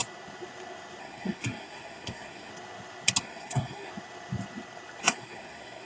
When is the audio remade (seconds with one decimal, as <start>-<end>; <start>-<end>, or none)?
1.0-2.5; 3.2-3.9; 5.0-5.9